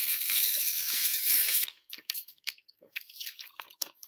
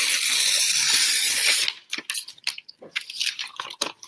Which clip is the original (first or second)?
second